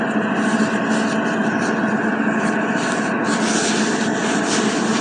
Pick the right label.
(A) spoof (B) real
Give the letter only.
B